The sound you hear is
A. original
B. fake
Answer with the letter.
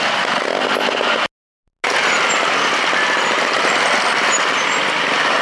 A